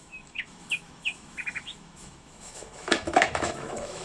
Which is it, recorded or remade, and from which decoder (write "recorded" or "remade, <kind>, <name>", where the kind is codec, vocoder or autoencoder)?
remade, autoencoder, DAC-VAE